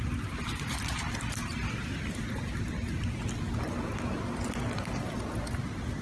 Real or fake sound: real